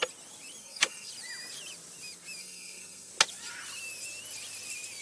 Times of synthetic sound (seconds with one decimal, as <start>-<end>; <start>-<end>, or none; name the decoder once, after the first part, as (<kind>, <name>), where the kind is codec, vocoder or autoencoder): 0.6-1.1 (codec, SNAC); 2.4-3.1